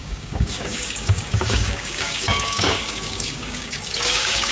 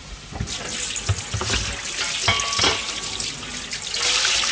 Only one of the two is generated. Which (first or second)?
first